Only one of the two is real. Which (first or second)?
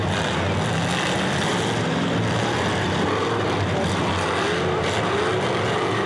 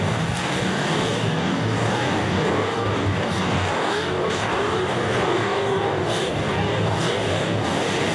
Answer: first